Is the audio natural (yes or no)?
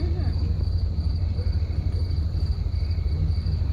yes